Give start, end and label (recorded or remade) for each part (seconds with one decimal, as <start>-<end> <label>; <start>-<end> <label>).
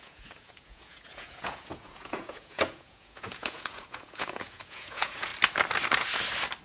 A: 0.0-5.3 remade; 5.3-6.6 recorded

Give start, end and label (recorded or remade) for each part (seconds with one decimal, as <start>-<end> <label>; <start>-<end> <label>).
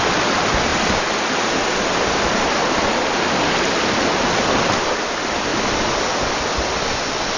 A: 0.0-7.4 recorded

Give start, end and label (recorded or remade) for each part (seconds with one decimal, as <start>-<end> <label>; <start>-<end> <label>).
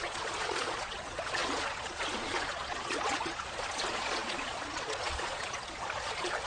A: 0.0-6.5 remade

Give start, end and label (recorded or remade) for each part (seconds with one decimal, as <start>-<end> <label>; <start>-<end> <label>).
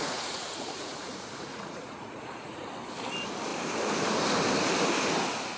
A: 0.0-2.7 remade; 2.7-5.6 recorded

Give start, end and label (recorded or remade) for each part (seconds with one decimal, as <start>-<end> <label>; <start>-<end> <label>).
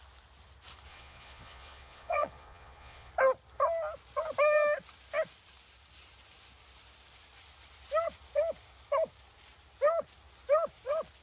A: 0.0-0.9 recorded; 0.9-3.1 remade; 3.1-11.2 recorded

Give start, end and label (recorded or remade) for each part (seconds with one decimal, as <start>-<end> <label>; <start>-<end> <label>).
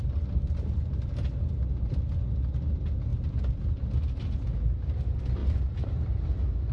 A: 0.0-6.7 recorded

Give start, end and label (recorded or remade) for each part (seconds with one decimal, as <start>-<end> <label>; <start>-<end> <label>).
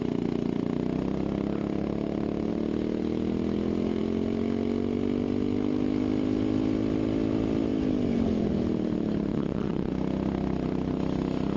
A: 0.0-9.3 recorded; 9.3-9.9 remade; 9.9-11.6 recorded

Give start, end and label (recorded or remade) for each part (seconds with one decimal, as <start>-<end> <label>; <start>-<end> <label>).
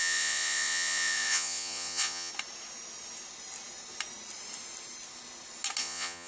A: 0.0-2.3 remade; 2.3-5.8 recorded; 5.8-6.3 remade